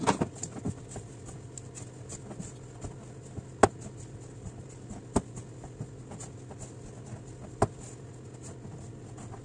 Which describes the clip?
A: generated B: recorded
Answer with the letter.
B